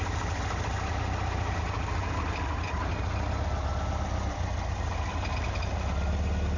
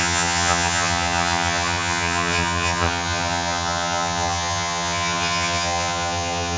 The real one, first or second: first